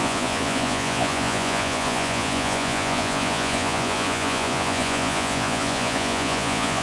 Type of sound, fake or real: fake